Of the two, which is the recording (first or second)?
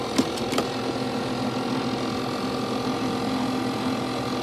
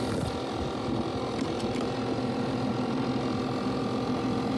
first